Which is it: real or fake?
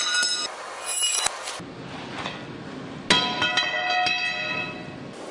real